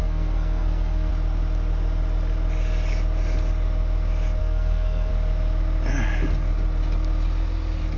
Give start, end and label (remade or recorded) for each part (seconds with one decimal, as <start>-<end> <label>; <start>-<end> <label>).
0.0-1.1 remade; 1.1-4.4 recorded; 4.4-5.1 remade; 5.1-8.0 recorded